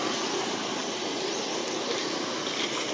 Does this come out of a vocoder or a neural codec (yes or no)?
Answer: no